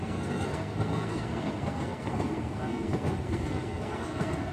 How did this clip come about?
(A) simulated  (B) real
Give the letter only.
A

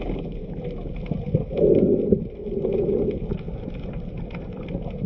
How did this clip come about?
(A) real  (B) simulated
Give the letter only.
A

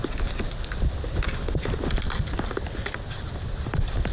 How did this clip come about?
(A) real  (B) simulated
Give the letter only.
A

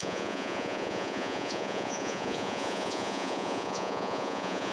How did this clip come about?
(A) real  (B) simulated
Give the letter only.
B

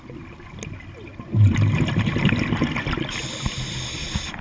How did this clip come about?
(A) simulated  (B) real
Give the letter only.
B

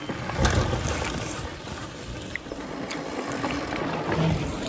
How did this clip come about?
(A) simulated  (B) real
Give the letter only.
B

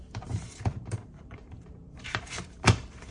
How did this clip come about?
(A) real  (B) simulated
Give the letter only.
B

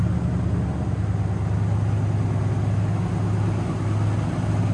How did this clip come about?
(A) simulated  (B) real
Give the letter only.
B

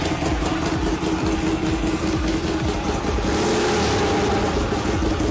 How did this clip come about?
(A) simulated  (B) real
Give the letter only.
B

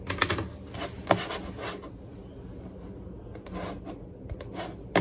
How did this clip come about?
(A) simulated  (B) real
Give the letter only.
B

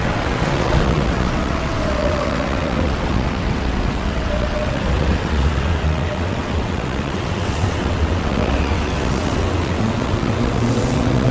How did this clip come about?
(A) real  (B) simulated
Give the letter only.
B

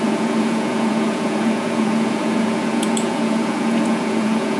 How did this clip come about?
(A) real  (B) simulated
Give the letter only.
B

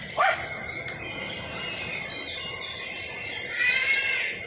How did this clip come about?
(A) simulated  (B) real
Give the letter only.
B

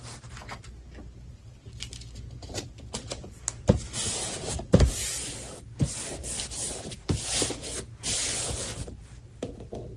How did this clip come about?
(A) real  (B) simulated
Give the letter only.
A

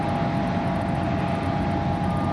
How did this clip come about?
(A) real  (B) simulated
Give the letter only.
A